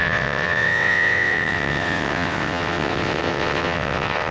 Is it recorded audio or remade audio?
remade